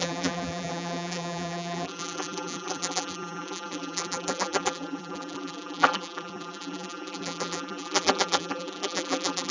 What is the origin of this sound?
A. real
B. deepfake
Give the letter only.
B